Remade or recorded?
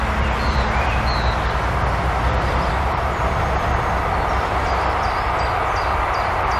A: recorded